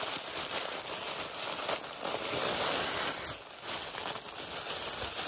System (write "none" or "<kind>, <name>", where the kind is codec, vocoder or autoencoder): none